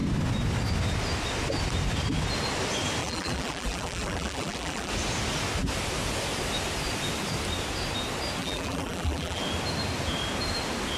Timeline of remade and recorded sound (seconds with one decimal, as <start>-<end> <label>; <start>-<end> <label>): 0.0-3.0 recorded; 3.0-4.9 remade; 4.9-8.4 recorded; 8.4-9.4 remade; 9.4-11.0 recorded